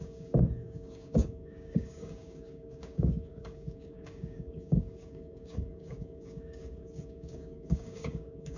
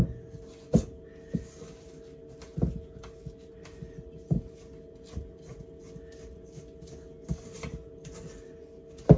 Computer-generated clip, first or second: first